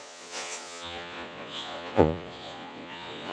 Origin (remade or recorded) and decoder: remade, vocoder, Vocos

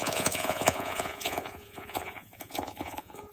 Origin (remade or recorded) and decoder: remade, vocoder, Vocos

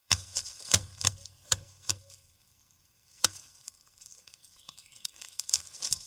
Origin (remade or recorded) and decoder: remade, codec, SNAC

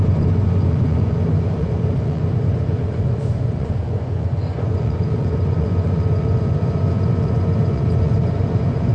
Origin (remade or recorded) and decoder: remade, vocoder, Vocos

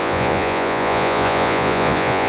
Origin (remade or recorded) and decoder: remade, vocoder, Vocos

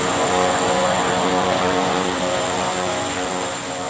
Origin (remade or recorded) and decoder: remade, vocoder, Vocos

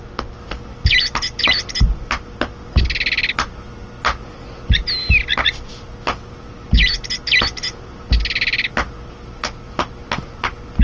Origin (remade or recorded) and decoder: recorded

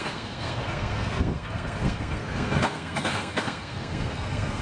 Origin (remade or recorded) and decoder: remade, codec, SNAC